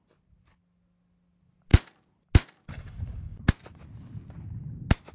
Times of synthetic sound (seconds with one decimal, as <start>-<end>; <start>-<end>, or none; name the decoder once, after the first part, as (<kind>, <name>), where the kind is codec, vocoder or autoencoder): none